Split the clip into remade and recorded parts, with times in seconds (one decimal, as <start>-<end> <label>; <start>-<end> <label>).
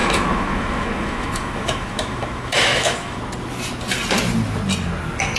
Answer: 0.0-3.2 remade; 3.2-5.4 recorded